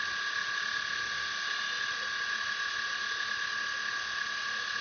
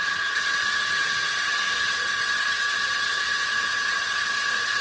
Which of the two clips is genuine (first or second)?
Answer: first